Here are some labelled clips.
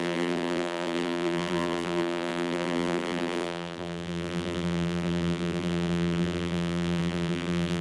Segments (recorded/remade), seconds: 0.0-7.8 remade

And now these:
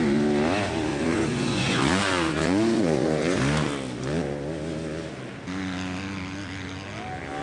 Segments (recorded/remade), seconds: 0.0-0.9 recorded; 0.9-3.4 remade; 3.4-7.4 recorded

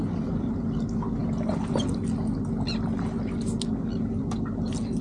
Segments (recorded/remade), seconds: 0.0-5.0 recorded

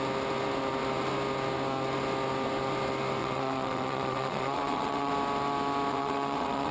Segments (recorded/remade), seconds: 0.0-3.2 recorded; 3.2-5.1 remade; 5.1-5.9 recorded; 5.9-6.7 remade

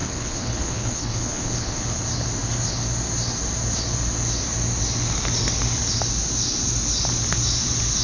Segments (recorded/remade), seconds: 0.0-2.0 remade; 2.0-8.0 recorded

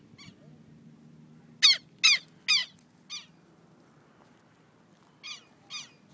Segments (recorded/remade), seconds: 0.0-6.1 recorded

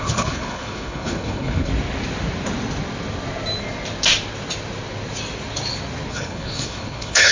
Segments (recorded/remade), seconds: 0.0-1.7 remade; 1.7-6.1 recorded; 6.1-7.3 remade